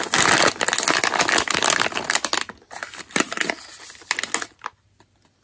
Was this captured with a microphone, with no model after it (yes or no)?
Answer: yes